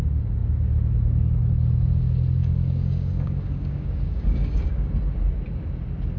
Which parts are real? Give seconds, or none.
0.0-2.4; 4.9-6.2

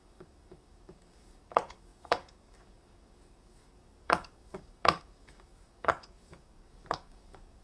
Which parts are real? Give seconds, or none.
none

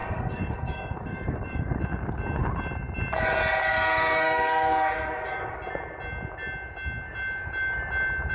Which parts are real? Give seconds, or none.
1.8-3.7; 5.5-8.3

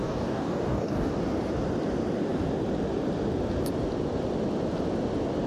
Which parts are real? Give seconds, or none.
1.1-5.5